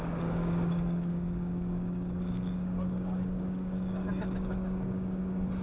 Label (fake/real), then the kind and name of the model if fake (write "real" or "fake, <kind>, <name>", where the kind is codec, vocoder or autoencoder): fake, codec, DAC